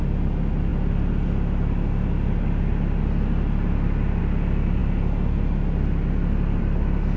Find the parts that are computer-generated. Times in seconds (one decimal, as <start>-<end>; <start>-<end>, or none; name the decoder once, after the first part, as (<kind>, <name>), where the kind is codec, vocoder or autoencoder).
none